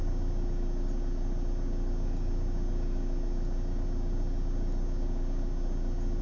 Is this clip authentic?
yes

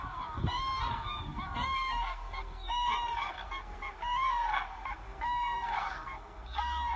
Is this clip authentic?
no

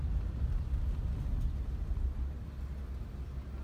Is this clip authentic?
yes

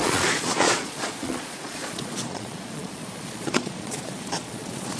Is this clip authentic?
no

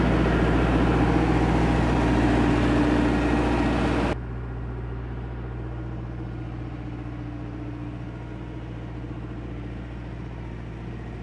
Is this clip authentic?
yes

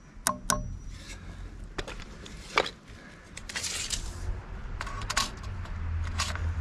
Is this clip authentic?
yes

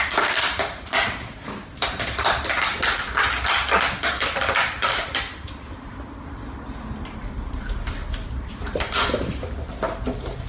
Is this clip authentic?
no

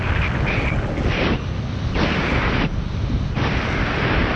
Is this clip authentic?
yes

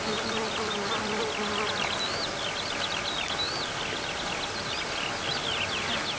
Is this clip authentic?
yes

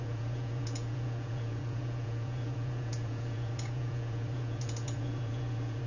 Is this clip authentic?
no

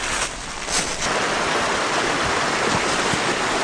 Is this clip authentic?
yes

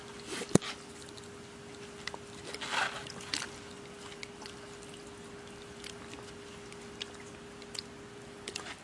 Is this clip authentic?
yes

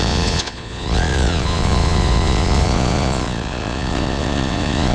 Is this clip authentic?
no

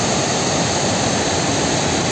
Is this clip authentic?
no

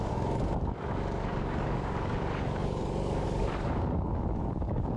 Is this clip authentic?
no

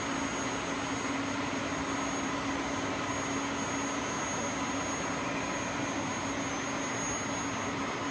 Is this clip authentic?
yes